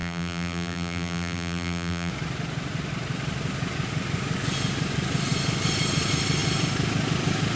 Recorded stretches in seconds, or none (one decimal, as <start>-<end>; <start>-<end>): 2.1-7.6